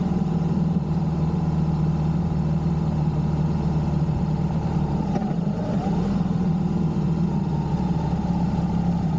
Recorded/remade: remade